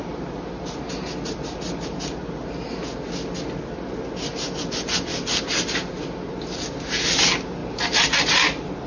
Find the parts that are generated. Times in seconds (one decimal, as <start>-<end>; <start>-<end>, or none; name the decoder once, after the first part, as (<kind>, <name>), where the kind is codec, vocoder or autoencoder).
0.0-0.9 (vocoder, BigVGAN v2); 7.6-8.9